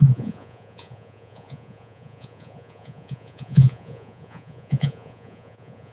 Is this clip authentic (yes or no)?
no